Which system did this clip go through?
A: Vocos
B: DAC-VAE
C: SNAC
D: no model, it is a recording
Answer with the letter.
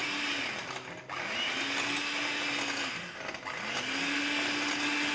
D